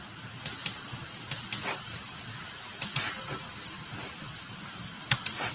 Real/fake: real